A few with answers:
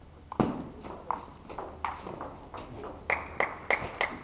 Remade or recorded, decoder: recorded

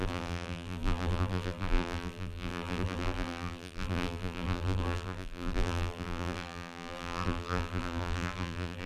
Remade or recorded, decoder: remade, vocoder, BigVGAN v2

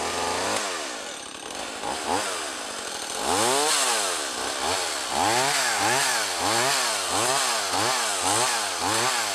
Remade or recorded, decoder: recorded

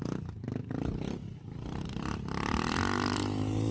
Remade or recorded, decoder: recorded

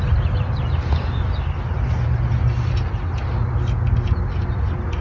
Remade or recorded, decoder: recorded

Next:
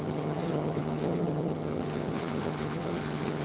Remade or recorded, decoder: remade, vocoder, HiFi-GAN